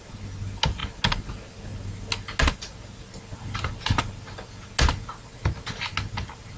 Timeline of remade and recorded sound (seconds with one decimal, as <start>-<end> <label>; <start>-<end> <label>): 0.0-6.6 recorded